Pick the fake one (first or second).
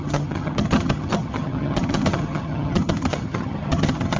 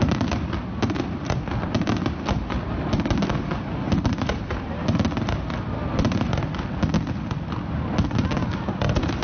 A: first